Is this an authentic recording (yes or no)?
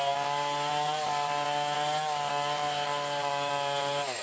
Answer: yes